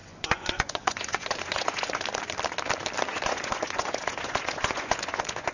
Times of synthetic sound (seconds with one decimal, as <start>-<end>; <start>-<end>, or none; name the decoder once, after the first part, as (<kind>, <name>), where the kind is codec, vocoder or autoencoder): 0.0-2.0 (vocoder, Vocos); 3.1-5.5